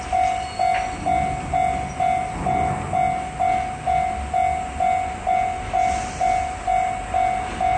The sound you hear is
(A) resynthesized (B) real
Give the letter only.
B